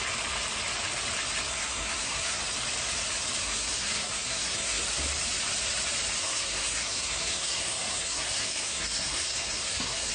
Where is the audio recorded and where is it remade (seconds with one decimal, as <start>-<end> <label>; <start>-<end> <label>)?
0.0-1.5 recorded; 1.5-2.4 remade; 2.4-3.4 recorded; 3.4-4.8 remade; 4.8-6.2 recorded; 6.2-10.1 remade